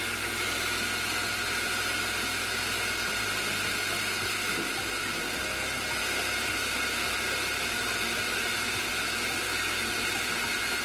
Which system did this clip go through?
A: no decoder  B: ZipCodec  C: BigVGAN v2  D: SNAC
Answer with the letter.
A